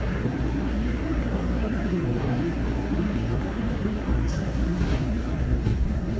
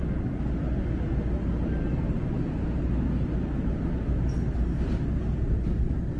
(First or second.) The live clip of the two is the second